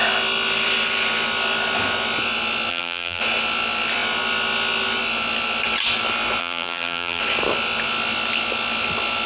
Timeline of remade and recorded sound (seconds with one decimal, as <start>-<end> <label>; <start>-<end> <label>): 0.0-2.7 recorded; 2.7-3.2 remade; 3.2-6.4 recorded; 6.4-7.2 remade; 7.2-9.3 recorded